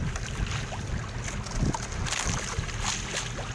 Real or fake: real